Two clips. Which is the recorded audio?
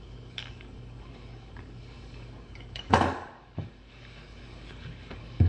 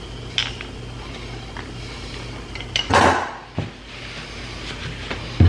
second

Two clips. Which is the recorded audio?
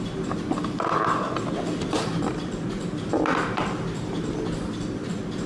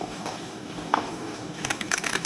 first